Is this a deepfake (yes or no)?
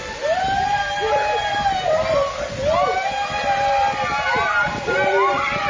no